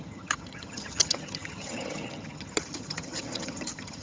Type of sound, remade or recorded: remade